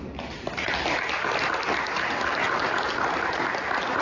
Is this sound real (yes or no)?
yes